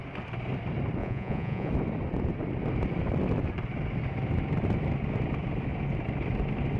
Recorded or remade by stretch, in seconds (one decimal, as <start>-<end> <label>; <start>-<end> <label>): 0.0-1.0 recorded; 1.0-1.7 remade; 1.7-6.8 recorded